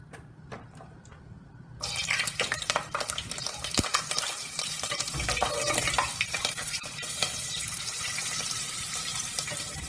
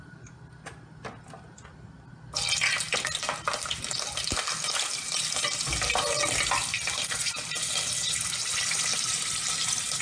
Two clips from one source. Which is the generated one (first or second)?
first